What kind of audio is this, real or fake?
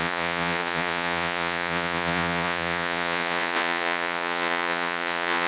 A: fake